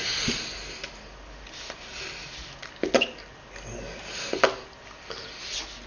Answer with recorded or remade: recorded